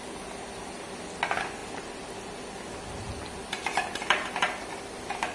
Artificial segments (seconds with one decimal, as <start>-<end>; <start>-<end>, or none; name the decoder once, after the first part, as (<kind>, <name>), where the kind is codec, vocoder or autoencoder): none

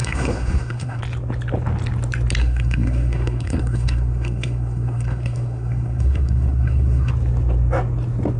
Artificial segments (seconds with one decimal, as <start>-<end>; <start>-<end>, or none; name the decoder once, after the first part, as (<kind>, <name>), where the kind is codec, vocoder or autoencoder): 0.0-1.0 (codec, SNAC); 2.4-7.1

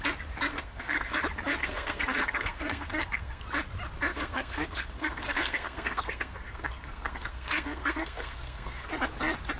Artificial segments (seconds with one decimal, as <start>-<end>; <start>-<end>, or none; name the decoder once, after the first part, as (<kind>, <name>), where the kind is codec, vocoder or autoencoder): 0.5-1.1 (codec, SNAC); 1.6-3.4; 4.1-8.9